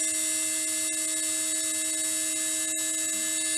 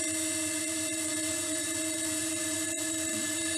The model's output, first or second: second